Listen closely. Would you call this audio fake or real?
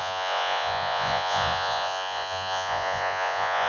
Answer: fake